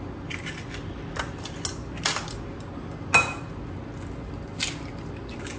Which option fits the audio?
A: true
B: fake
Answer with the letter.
A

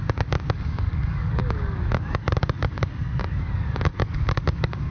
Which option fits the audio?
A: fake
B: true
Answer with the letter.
A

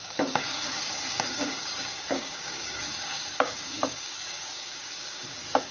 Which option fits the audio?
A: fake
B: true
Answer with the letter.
A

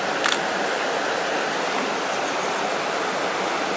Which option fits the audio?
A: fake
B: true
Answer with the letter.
B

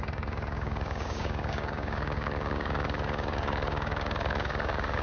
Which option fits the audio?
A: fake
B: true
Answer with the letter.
A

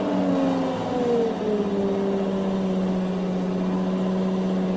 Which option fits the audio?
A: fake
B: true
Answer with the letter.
B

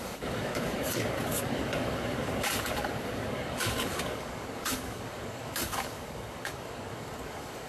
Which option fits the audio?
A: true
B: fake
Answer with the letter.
B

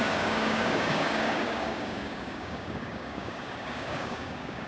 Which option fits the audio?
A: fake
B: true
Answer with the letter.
A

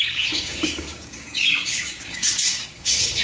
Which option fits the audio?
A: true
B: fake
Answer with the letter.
B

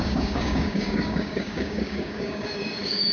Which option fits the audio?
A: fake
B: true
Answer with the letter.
A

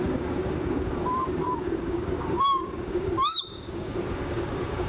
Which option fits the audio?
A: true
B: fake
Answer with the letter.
B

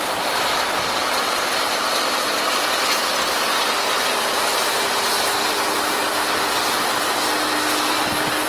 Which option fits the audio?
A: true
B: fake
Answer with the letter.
A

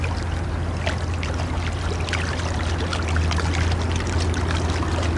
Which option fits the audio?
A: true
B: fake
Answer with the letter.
A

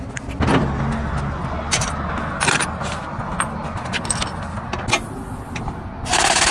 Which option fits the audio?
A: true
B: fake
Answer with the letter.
A